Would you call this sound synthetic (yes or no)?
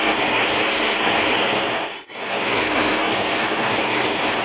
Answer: yes